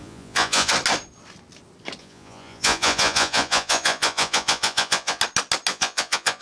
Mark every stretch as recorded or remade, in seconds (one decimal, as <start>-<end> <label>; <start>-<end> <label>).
0.0-0.7 remade; 0.7-2.0 recorded; 2.0-5.2 remade; 5.2-5.7 recorded; 5.7-6.4 remade